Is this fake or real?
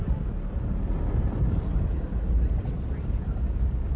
real